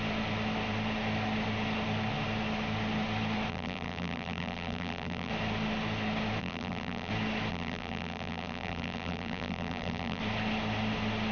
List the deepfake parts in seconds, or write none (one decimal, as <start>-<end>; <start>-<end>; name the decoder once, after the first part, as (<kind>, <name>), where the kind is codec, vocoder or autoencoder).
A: 3.5-5.3 (vocoder, BigVGAN v2); 6.4-7.1; 7.5-10.2